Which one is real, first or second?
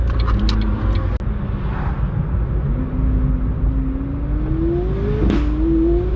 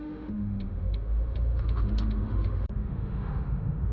first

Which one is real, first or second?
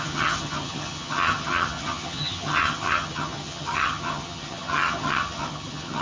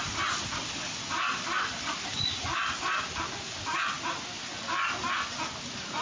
second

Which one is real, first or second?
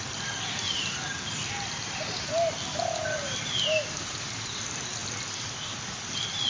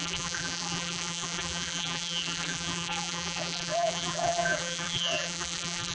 first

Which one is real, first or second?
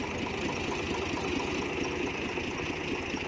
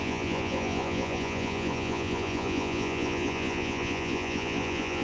first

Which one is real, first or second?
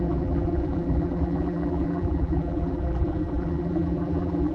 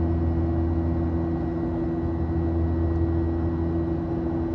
second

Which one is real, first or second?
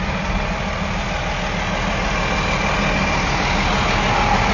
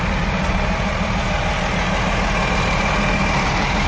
first